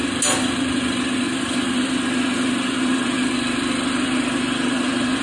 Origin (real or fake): real